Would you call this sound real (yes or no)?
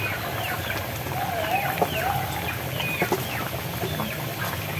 yes